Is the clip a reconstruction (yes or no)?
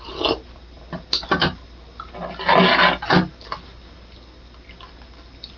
no